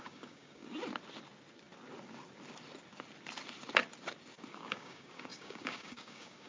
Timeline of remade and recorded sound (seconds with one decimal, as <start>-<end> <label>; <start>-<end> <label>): 0.0-0.6 remade; 0.6-4.5 recorded; 4.5-6.5 remade